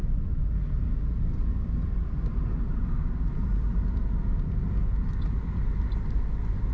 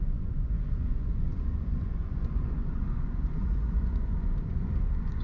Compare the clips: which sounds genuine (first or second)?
first